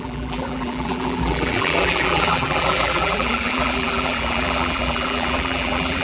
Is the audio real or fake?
fake